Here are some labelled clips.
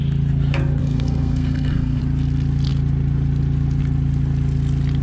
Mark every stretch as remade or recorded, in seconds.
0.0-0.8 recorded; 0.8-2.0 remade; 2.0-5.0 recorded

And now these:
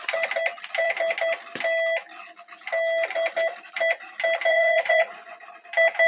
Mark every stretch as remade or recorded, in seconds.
0.0-4.5 recorded; 4.5-5.4 remade; 5.4-6.1 recorded

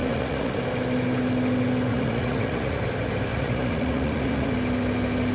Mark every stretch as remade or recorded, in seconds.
0.0-0.6 remade; 0.6-1.9 recorded; 1.9-2.8 remade; 2.8-3.3 recorded; 3.3-4.5 remade; 4.5-5.3 recorded

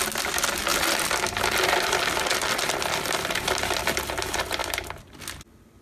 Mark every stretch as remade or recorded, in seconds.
0.0-0.7 recorded; 0.7-3.8 remade; 3.8-5.8 recorded

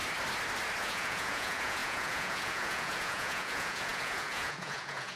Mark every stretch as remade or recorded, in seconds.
0.0-0.8 recorded; 0.8-5.2 remade

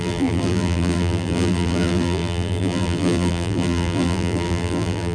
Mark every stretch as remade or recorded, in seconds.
0.0-5.1 remade

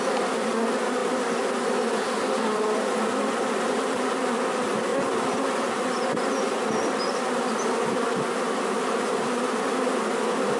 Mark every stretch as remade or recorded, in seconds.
0.0-10.6 recorded